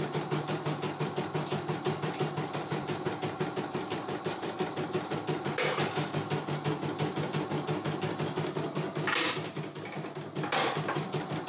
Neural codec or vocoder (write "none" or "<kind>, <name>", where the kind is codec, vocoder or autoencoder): none